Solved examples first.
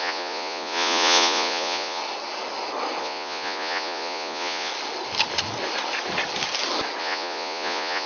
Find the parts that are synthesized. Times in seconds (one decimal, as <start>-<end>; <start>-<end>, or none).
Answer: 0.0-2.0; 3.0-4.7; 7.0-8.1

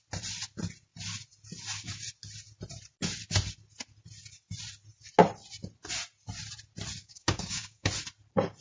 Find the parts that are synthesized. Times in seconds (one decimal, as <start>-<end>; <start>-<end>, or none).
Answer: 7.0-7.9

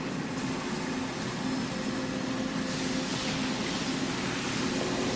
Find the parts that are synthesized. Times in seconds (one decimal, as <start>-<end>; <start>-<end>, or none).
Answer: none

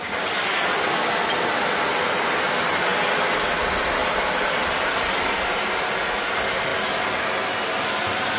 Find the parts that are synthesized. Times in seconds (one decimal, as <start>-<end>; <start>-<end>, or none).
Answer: none